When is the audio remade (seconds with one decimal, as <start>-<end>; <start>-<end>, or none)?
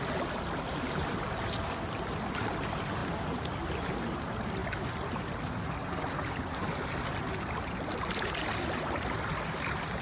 none